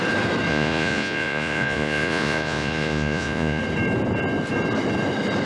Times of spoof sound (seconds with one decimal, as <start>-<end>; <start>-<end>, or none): 0.5-3.6